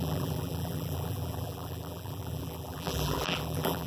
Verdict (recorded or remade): remade